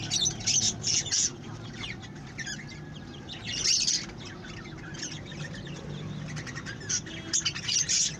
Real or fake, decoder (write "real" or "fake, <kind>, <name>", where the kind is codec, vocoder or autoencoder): real